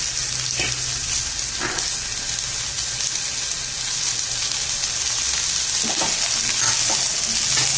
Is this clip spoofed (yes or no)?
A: no